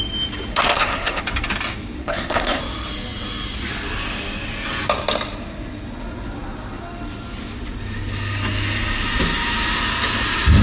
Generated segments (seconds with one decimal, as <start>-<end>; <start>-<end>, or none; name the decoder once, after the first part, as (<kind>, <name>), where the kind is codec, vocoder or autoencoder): 0.5-1.2 (codec, SNAC); 2.0-2.6

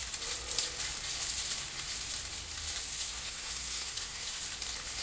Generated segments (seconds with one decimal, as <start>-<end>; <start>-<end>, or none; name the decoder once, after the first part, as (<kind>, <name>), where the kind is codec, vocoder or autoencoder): 2.9-4.4 (codec, SNAC)

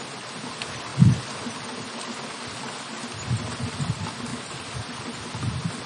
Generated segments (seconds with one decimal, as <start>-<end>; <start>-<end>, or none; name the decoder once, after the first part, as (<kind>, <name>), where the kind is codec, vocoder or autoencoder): none

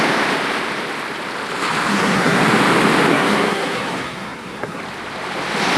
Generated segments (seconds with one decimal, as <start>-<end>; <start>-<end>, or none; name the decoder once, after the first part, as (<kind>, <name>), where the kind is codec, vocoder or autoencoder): 1.9-2.4 (codec, SNAC); 3.1-4.8